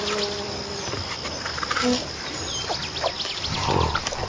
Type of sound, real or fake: real